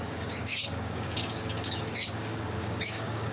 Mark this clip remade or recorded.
remade